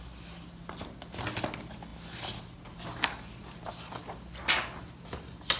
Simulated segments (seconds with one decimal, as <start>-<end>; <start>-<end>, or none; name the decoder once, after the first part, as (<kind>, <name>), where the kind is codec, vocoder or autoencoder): none